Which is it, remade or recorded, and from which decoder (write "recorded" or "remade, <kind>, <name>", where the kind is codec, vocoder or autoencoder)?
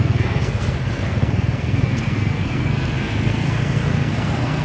remade, codec, SNAC